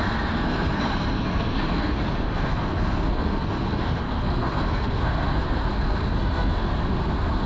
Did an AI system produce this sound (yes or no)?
yes